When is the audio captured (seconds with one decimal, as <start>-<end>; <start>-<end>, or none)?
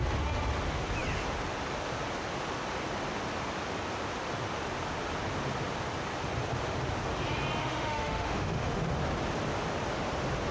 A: 0.0-7.6; 8.8-10.5